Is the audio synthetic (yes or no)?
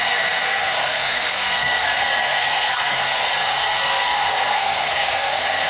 yes